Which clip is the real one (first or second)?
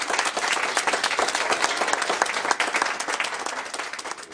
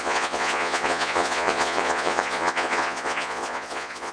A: first